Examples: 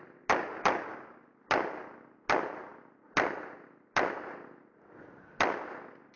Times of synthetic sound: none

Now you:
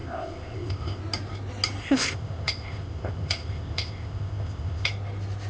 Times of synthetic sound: 0.0-1.0 (codec, ZipCodec); 1.8-4.9